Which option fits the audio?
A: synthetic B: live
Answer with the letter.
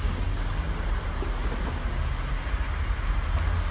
B